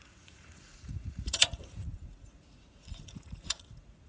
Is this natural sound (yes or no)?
no